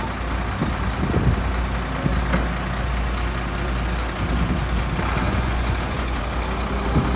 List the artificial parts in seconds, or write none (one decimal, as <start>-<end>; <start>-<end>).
5.2-6.2